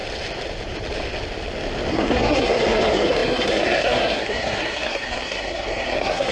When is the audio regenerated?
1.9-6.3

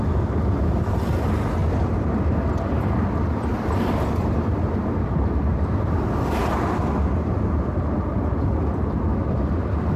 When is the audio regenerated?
none

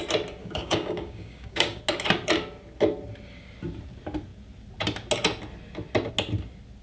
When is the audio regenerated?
0.4-1.8

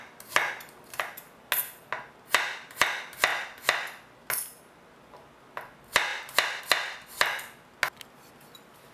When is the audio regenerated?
none

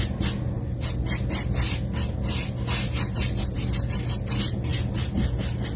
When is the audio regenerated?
none

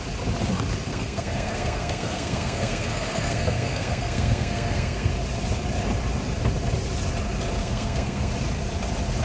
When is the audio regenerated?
0.9-5.1; 7.6-8.3

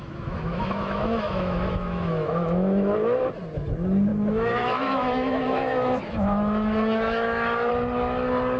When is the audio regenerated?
0.0-2.9; 4.1-7.7